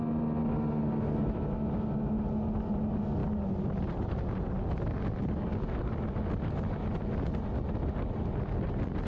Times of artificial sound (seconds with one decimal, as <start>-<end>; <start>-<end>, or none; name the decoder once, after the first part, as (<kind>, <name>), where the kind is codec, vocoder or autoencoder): none